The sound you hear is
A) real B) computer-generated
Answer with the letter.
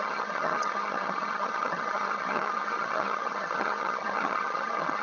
B